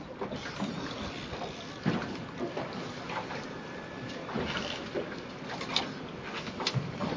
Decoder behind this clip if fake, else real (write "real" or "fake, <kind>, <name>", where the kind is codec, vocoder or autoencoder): real